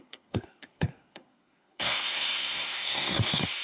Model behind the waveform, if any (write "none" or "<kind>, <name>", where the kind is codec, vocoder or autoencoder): codec, SNAC